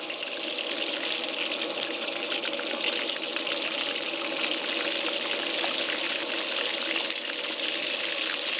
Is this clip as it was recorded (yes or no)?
yes